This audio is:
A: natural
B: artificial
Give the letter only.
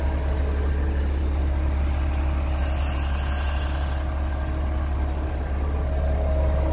A